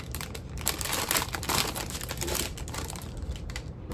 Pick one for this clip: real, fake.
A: fake